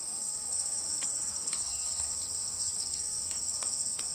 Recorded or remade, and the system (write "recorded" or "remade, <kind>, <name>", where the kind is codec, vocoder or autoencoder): remade, codec, SNAC